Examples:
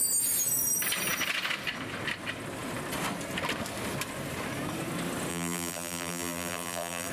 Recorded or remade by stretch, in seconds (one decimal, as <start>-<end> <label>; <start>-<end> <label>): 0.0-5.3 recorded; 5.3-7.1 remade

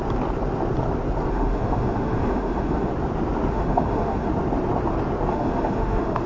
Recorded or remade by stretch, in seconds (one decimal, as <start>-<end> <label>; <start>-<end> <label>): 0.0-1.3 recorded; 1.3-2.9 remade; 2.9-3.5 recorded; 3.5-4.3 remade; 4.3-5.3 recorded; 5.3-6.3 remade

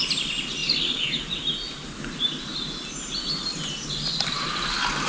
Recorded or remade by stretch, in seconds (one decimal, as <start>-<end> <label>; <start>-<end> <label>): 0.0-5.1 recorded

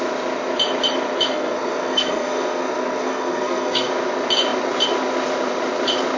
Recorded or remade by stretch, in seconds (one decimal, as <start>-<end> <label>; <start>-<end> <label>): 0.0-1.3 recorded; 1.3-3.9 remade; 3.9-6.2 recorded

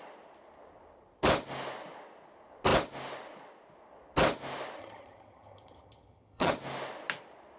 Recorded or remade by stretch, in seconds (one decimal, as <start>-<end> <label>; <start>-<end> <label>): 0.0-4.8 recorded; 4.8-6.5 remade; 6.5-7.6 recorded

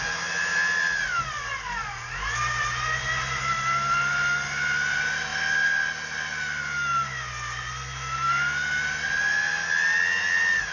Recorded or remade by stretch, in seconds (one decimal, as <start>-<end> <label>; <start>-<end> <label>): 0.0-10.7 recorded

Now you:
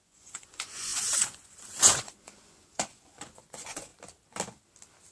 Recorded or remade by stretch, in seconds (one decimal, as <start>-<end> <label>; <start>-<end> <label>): 0.0-3.9 remade; 3.9-5.1 recorded

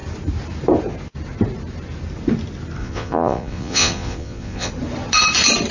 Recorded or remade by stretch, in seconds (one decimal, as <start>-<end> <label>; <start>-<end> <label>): 0.0-2.8 recorded; 2.8-4.7 remade; 4.7-5.7 recorded